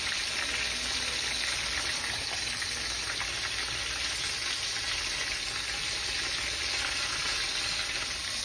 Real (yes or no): yes